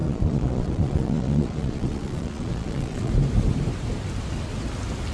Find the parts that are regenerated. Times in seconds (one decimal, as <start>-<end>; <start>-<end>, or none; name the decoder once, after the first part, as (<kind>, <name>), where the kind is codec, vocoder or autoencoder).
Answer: 0.0-3.1 (vocoder, Vocos)